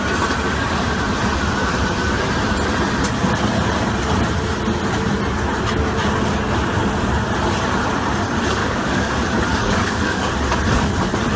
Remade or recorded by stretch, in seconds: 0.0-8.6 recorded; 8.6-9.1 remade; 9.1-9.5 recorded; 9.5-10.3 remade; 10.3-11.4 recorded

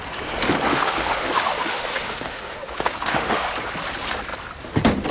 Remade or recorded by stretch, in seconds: 0.0-0.7 recorded; 0.7-3.5 remade; 3.5-5.1 recorded

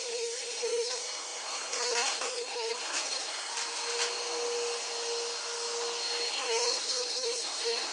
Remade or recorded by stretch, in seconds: 0.0-3.5 remade; 3.5-6.3 recorded; 6.3-7.9 remade

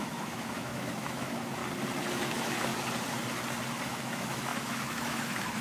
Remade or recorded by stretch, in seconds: 0.0-1.6 remade; 1.6-2.3 recorded; 2.3-2.7 remade; 2.7-3.8 recorded; 3.8-5.6 remade

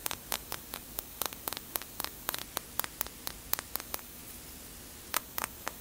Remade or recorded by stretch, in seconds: 0.0-2.4 remade; 2.4-3.8 recorded; 3.8-4.2 remade; 4.2-5.1 recorded; 5.1-5.8 remade